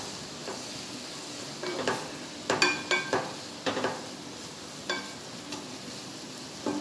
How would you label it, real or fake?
real